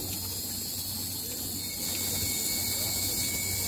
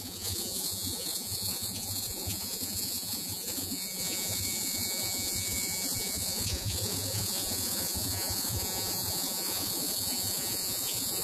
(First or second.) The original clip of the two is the first